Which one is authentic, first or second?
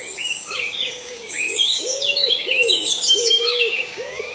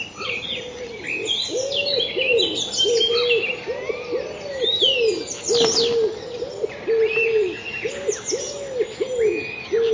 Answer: second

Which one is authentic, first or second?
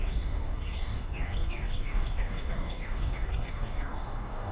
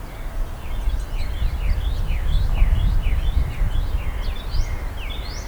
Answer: second